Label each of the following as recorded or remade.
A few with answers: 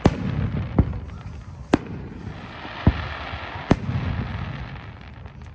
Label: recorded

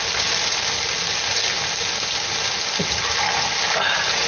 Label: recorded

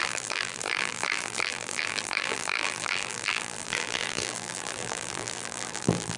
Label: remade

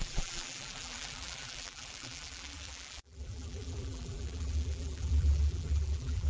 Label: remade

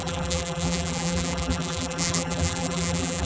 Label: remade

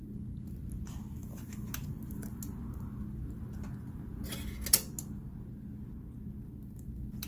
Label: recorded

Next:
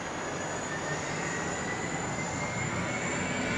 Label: recorded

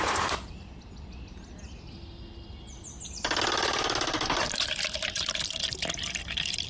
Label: recorded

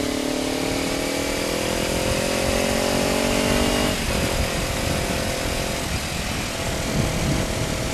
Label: recorded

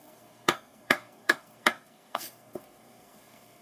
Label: remade